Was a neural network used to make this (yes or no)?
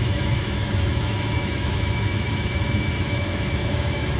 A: yes